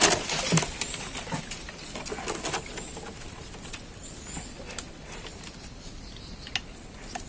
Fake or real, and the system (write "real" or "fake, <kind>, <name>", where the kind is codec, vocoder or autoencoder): real